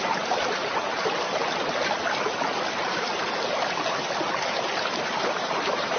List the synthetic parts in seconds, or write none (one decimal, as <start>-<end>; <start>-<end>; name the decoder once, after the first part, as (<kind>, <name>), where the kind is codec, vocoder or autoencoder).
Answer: 0.0-1.4 (vocoder, BigVGAN v2); 5.0-6.0